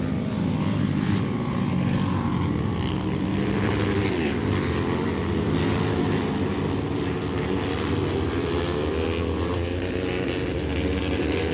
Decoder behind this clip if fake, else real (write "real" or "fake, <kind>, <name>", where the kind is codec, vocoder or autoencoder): real